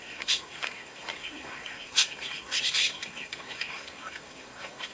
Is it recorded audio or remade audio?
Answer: remade